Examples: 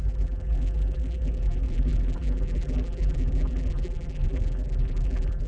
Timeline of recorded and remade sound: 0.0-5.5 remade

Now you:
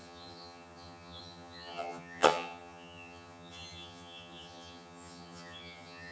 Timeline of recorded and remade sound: 0.0-6.1 remade

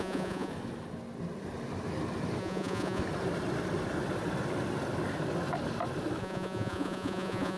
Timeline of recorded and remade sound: 0.0-0.5 remade; 0.5-2.4 recorded; 2.4-3.0 remade; 3.0-6.2 recorded; 6.2-7.6 remade